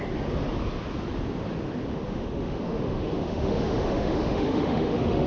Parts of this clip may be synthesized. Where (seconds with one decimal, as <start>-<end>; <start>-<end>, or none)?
1.9-5.3